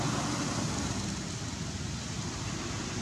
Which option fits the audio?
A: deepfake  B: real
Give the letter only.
B